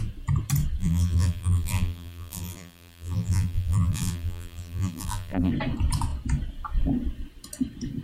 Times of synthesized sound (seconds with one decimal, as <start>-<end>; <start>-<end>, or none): 0.8-5.5